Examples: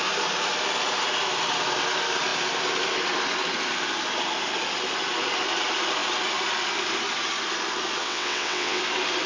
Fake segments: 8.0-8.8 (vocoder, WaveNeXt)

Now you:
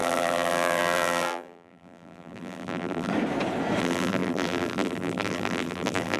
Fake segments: 0.0-3.1 (vocoder, BigVGAN v2); 3.8-6.2

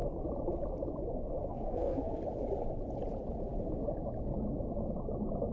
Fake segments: 1.5-2.2 (codec, SNAC)

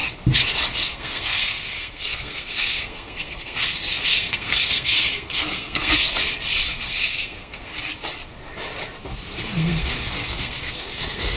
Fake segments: 0.8-6.2 (codec, SNAC); 6.7-7.7; 9.4-11.4